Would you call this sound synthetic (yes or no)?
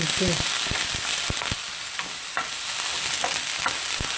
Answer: no